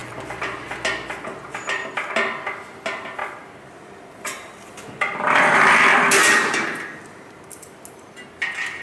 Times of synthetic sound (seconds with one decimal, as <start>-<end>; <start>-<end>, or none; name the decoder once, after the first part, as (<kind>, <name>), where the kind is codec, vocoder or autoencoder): 0.0-0.7 (vocoder, BigVGAN v2); 3.2-7.8